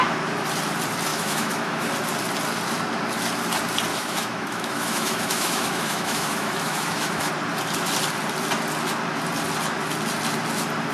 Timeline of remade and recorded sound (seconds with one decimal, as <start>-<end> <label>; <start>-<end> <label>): 0.0-1.1 recorded; 1.1-1.9 remade; 1.9-3.9 recorded; 3.9-7.3 remade; 7.3-10.9 recorded